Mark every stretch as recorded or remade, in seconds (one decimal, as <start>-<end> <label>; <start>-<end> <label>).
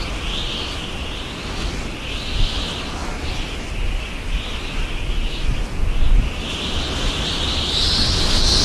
0.0-8.6 recorded